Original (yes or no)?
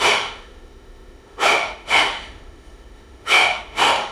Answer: no